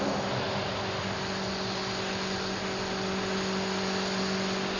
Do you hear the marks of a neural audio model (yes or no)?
no